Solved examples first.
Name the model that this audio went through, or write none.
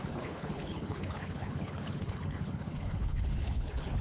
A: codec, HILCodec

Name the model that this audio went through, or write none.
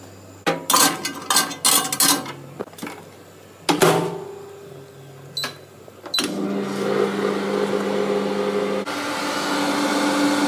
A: none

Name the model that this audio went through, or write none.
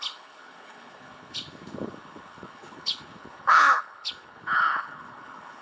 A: codec, HILCodec